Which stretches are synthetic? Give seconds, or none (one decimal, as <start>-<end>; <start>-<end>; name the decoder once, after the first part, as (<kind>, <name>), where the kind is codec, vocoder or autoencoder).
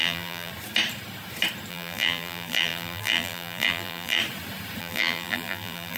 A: 0.0-0.5 (vocoder, BigVGAN v2); 1.7-4.2; 4.8-6.0